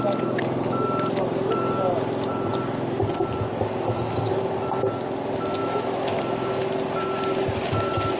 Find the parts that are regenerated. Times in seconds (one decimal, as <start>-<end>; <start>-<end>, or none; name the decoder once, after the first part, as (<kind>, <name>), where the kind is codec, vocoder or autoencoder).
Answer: 5.6-6.2 (autoencoder, DAC-VAE)